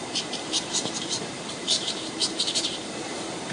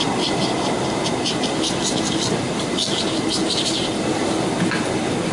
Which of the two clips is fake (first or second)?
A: first